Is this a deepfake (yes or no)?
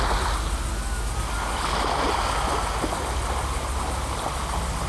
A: no